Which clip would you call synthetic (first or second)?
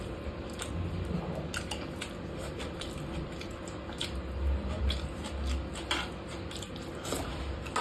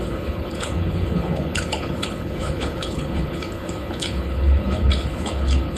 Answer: second